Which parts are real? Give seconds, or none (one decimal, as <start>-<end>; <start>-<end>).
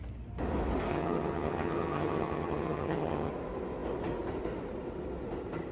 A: 0.0-0.9; 3.3-5.7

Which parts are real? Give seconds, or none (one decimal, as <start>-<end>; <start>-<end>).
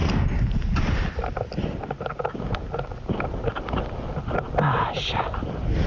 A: 0.0-5.9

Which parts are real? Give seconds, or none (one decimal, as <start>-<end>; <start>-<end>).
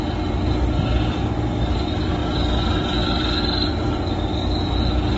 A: 0.0-5.2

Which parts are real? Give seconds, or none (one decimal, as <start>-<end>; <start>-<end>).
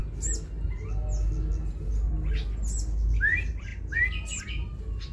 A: 0.0-5.1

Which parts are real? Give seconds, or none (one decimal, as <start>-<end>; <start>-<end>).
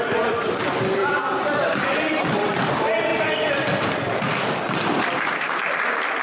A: 0.0-1.0; 2.7-3.1; 4.4-6.2